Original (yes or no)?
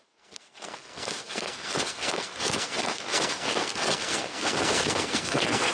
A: no